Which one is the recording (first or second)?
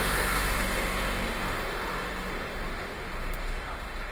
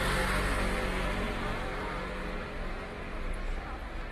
second